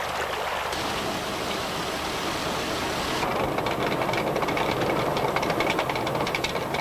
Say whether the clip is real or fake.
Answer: real